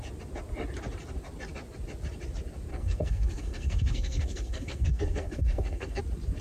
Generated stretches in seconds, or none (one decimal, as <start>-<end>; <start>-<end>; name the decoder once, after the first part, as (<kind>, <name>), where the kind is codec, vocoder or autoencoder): 2.7-6.0 (codec, SNAC)